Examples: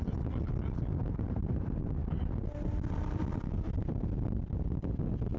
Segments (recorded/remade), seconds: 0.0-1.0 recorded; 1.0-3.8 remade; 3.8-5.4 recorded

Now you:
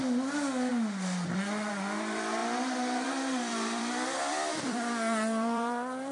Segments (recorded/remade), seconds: 0.0-2.4 recorded; 2.4-3.1 remade; 3.1-3.5 recorded; 3.5-6.1 remade

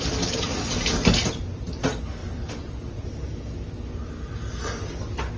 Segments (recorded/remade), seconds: 0.0-0.5 recorded; 0.5-1.3 remade; 1.3-2.2 recorded; 2.2-3.2 remade; 3.2-5.4 recorded

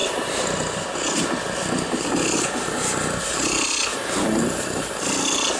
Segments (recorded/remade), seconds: 0.0-5.6 recorded

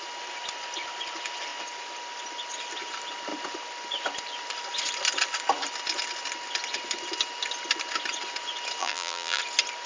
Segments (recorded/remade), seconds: 0.0-8.8 recorded; 8.8-9.4 remade; 9.4-9.9 recorded